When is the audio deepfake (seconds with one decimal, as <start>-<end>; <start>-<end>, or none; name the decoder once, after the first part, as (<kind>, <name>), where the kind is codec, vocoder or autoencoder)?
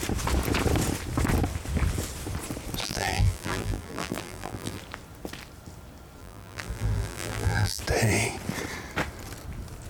2.8-4.8 (vocoder, BigVGAN v2); 6.2-7.8